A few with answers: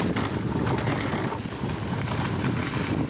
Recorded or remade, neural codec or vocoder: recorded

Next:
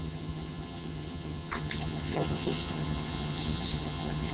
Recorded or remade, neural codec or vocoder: remade, vocoder, HiFi-GAN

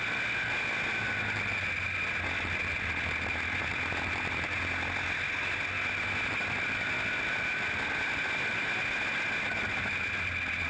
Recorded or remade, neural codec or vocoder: recorded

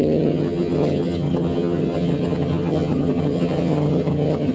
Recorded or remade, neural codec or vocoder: remade, vocoder, HiFi-GAN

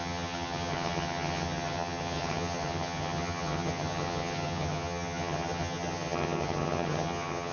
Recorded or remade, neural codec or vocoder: remade, vocoder, HiFi-GAN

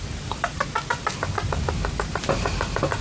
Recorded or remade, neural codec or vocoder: recorded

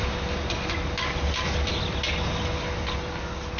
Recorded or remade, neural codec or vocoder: recorded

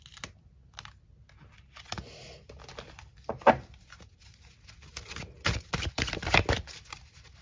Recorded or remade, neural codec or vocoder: recorded